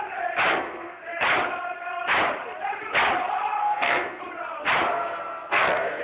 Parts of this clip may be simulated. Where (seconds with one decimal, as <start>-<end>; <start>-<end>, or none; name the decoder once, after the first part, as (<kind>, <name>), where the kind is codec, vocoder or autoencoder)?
0.5-1.0 (codec, SNAC); 3.6-4.2; 4.9-6.0